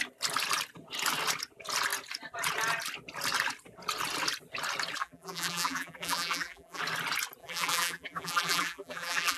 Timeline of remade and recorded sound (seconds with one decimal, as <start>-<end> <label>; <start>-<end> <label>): 0.0-5.0 recorded; 5.0-6.8 remade; 6.8-7.4 recorded; 7.4-9.4 remade